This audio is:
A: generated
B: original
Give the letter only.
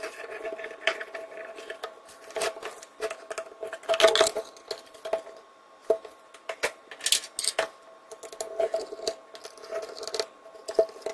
B